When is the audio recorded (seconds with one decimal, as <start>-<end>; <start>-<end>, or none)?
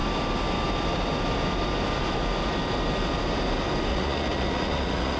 0.0-3.9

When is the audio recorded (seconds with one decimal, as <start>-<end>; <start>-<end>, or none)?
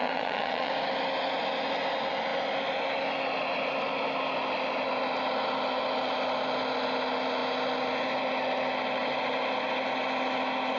0.7-10.8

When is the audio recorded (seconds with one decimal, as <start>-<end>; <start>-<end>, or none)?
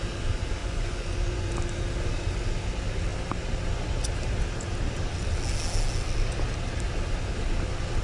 0.0-0.6; 1.5-8.0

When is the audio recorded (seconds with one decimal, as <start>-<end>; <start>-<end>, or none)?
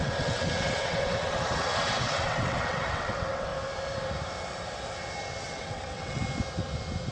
3.5-5.4; 6.2-7.1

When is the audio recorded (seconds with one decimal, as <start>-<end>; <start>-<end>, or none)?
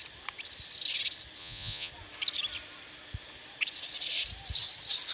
0.0-1.4; 1.9-5.1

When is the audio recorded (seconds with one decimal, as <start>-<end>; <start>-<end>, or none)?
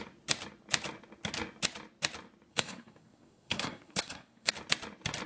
0.0-2.5; 4.5-5.3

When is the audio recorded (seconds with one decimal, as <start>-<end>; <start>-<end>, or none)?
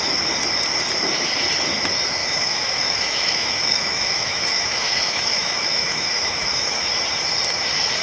0.0-2.2; 6.9-8.0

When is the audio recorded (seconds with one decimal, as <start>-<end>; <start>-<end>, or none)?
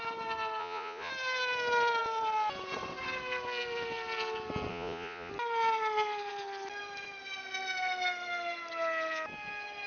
0.0-0.6; 1.1-4.7; 5.3-9.9